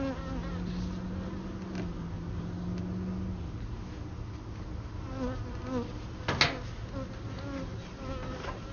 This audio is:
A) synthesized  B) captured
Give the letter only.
B